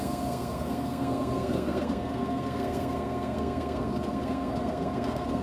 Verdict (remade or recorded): remade